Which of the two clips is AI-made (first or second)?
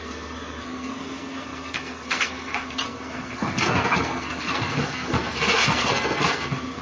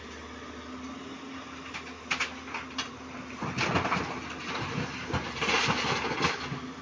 first